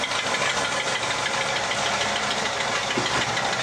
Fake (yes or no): no